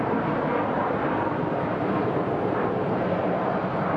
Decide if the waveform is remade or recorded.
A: remade